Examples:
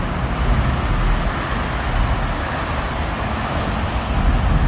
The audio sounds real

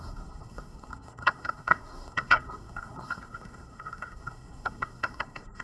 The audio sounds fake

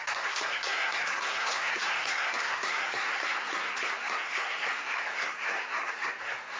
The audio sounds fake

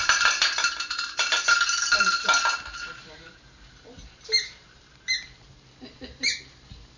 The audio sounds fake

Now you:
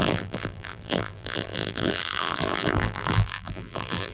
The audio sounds fake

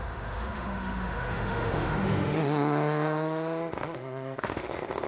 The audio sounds fake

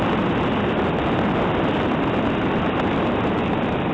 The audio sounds real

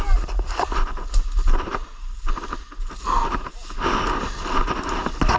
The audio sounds real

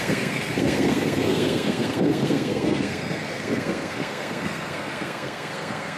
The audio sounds fake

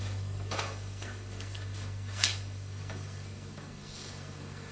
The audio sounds fake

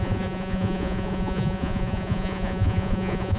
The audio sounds fake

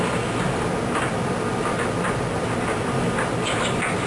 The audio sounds real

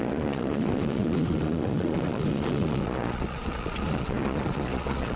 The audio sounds fake